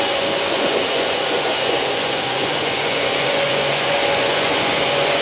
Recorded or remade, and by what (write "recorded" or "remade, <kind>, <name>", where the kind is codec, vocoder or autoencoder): remade, vocoder, Vocos